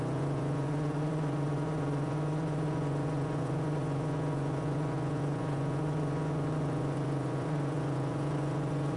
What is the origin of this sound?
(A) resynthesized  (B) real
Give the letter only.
A